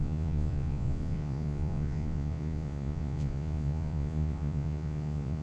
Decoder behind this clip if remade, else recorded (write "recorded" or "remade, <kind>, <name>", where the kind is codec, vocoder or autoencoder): remade, vocoder, Vocos